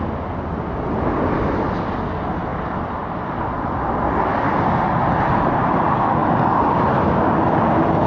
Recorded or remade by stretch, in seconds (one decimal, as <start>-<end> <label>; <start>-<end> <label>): 0.0-6.2 recorded; 6.2-7.0 remade; 7.0-8.1 recorded